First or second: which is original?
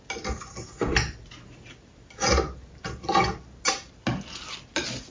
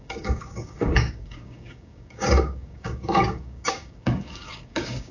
first